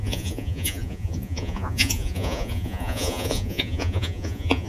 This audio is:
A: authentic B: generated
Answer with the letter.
B